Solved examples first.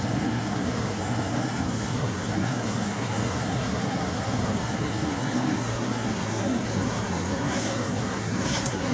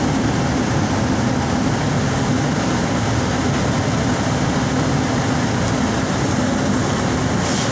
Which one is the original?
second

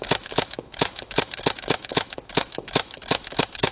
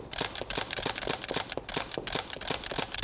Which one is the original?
second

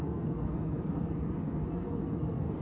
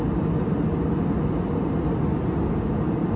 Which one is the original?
second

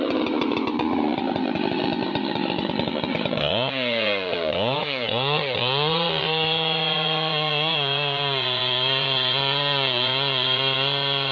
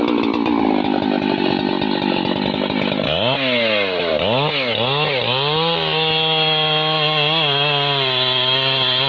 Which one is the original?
second